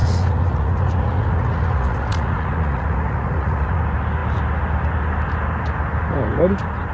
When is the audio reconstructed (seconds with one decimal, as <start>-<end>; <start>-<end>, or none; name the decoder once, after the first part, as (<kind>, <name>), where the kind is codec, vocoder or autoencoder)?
0.0-3.8 (vocoder, Vocos)